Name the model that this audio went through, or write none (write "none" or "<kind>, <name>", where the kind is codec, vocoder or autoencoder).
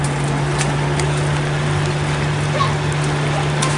none